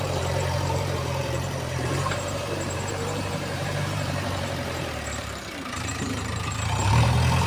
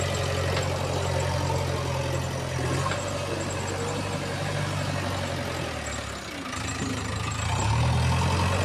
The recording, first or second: second